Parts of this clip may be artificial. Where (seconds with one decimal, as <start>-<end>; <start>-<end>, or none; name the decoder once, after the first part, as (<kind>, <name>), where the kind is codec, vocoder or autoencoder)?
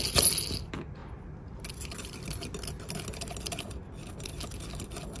none